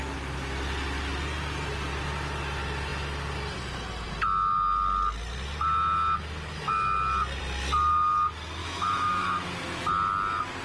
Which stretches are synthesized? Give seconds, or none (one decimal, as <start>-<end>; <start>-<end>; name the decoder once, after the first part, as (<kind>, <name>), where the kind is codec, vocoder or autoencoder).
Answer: 8.6-9.5 (autoencoder, DAC-VAE)